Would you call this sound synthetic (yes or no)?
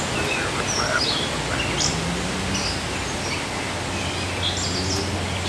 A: no